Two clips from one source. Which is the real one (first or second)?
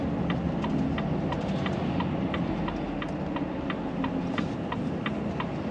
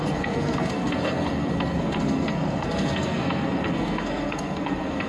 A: first